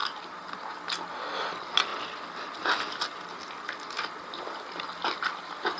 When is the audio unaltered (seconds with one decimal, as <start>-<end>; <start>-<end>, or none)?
0.0-5.8